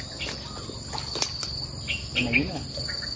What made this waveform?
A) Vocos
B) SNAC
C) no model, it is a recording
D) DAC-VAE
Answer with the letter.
C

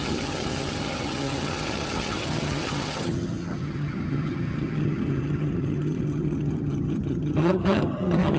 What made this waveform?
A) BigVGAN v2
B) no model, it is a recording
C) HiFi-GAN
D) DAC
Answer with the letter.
C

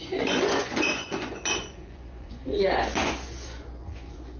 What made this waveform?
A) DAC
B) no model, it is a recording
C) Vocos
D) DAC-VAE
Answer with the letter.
C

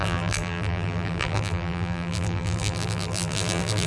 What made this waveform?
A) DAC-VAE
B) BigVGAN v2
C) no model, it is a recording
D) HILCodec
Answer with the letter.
B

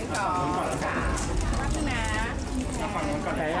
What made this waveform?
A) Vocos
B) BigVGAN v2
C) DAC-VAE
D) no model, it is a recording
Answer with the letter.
D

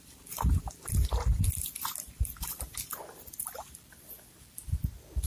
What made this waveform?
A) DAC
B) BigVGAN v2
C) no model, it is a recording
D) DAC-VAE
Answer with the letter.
B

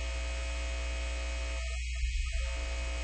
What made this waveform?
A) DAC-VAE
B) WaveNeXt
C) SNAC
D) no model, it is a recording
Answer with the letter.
D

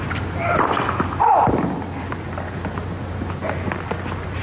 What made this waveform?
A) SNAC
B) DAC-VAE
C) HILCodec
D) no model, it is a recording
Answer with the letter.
D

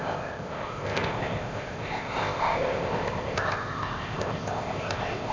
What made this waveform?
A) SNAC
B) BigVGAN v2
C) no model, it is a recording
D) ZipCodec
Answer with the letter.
D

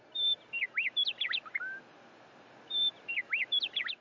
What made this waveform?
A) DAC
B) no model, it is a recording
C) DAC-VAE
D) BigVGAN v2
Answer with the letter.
B